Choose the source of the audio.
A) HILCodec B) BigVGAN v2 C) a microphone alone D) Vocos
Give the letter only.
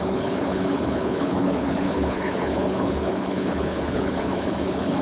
A